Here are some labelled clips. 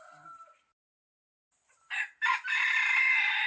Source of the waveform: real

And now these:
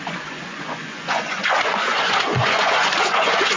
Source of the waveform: fake